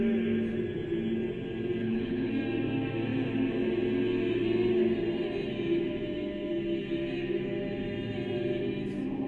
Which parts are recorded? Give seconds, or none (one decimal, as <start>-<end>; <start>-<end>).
0.0-1.8; 2.3-9.3